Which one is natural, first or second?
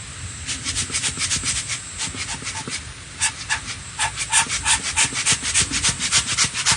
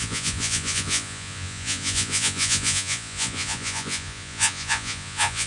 first